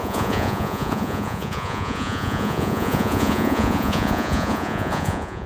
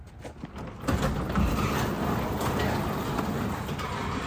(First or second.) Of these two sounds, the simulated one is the first